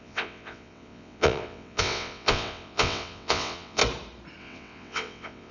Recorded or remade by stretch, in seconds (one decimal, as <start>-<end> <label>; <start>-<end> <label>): 0.0-3.8 remade; 3.8-4.4 recorded; 4.4-5.5 remade